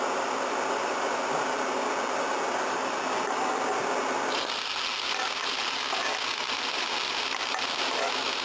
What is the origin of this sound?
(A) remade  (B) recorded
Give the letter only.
B